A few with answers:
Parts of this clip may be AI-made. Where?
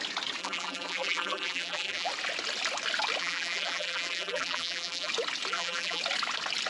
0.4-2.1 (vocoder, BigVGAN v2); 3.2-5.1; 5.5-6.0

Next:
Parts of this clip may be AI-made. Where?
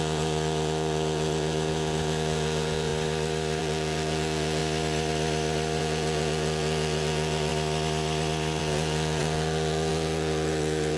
0.0-2.9 (vocoder, Vocos); 3.6-4.6; 5.8-7.5; 8.6-11.0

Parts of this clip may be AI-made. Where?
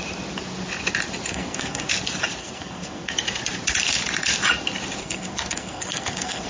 1.3-1.9 (codec, SNAC); 2.4-3.1; 5.0-6.5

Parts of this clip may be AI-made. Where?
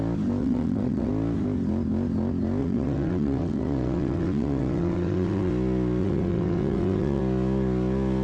0.4-1.1 (vocoder, WaveNeXt); 2.6-5.5; 6.0-7.2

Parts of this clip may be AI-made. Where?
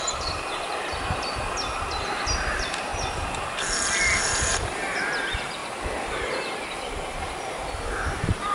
0.0-0.7 (vocoder, BigVGAN v2); 2.5-2.9; 4.2-5.6; 7.4-8.5